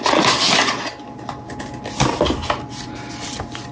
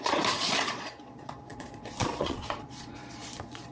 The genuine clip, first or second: first